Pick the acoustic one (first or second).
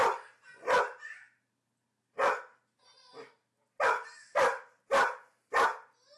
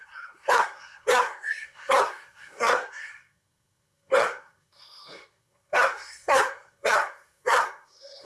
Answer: first